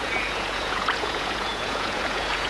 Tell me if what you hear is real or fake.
fake